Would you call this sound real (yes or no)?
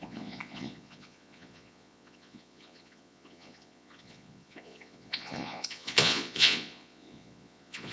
no